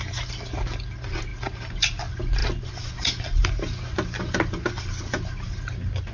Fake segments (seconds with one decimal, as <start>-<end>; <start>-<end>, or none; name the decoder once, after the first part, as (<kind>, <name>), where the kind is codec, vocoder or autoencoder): 1.3-2.0 (vocoder, BigVGAN v2)